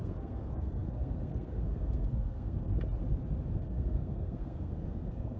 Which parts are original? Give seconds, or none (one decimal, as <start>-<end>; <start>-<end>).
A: 2.7-3.5